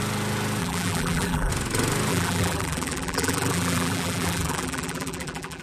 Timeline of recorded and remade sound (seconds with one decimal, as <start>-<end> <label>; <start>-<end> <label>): 0.0-0.6 recorded; 0.6-1.5 remade; 1.5-2.1 recorded; 2.1-5.6 remade